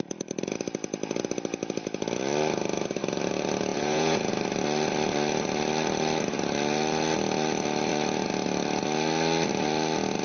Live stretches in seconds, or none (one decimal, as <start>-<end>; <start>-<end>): 0.0-3.7; 4.3-10.2